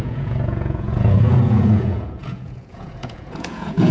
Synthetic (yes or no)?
yes